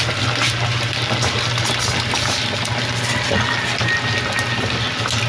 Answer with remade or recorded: recorded